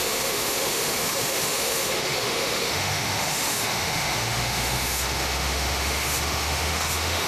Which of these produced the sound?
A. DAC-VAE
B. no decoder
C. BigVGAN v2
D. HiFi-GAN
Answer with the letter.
A